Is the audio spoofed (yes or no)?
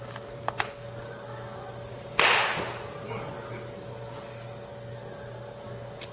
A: no